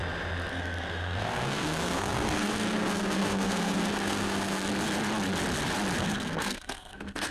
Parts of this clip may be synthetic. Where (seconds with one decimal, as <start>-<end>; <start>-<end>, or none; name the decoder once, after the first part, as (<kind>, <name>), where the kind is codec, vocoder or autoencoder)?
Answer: 0.5-4.7 (codec, SNAC); 6.0-7.3